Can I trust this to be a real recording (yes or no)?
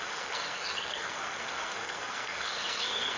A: no